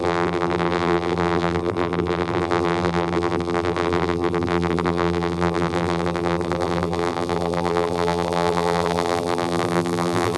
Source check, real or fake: fake